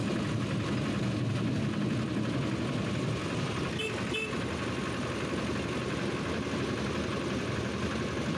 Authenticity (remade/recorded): recorded